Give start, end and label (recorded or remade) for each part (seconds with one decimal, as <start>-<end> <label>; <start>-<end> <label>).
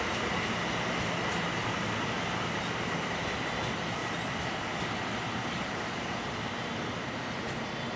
0.0-1.6 recorded; 1.6-3.2 remade; 3.2-4.0 recorded; 4.0-7.2 remade; 7.2-8.0 recorded